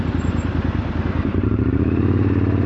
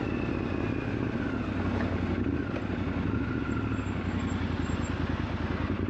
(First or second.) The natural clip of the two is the second